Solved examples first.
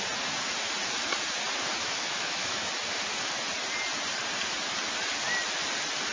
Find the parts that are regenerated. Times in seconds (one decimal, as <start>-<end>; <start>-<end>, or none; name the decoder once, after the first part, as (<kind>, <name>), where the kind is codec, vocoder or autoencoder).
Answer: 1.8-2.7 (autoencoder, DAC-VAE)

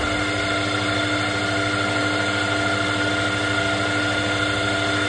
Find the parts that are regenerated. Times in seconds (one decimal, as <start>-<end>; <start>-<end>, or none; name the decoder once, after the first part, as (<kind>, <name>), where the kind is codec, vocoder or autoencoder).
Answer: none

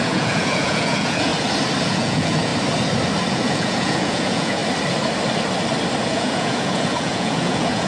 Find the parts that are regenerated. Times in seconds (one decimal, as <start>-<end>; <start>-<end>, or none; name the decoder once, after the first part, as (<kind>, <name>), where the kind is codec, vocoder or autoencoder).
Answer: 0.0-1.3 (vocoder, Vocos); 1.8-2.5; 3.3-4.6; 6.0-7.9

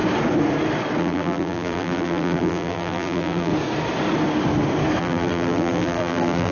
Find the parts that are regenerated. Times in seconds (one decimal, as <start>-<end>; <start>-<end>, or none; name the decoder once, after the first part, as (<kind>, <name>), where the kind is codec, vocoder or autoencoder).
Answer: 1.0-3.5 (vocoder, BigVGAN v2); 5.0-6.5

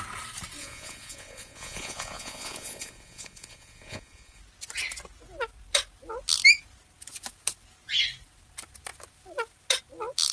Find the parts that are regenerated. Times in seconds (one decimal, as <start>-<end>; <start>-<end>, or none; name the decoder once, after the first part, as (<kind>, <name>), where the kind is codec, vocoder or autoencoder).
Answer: 0.6-4.4 (vocoder, Vocos)